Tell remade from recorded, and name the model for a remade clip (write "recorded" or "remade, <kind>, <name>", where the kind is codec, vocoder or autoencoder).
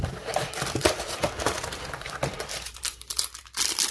remade, vocoder, BigVGAN v2